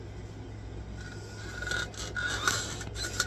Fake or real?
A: real